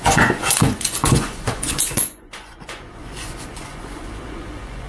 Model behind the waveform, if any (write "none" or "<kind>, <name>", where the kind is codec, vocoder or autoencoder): vocoder, Vocos